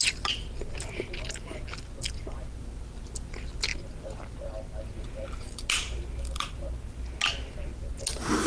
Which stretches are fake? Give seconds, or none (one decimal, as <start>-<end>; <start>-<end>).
none